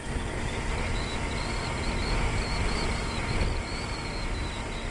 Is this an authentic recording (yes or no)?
yes